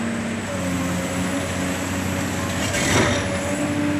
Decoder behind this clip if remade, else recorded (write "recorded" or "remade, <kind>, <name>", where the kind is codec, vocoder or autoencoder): recorded